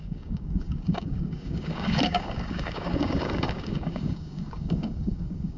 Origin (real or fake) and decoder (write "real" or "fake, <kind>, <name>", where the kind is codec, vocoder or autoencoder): fake, codec, DAC